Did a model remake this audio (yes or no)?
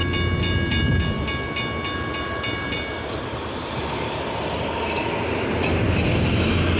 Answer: no